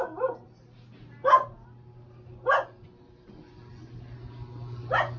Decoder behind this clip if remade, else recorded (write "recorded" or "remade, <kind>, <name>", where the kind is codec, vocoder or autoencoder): recorded